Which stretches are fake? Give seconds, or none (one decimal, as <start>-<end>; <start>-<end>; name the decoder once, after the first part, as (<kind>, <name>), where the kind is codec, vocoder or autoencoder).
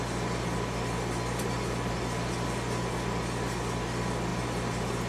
none